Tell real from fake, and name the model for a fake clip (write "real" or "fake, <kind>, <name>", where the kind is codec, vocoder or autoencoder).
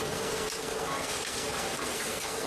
fake, codec, SNAC